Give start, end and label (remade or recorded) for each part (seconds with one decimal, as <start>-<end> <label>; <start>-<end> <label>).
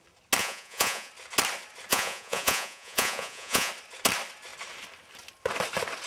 0.0-0.4 recorded; 0.4-1.1 remade; 1.1-1.9 recorded; 1.9-3.7 remade; 3.7-6.1 recorded